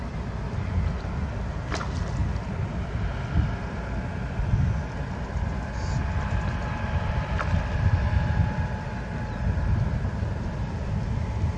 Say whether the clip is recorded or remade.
recorded